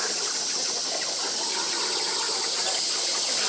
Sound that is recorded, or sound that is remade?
recorded